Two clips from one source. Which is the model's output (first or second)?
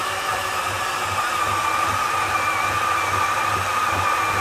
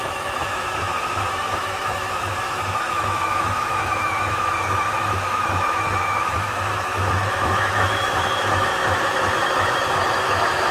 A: second